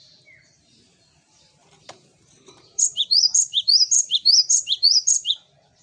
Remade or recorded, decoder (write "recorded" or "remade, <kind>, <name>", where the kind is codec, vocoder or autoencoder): remade, vocoder, BigVGAN v2